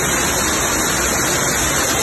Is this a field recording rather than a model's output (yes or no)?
yes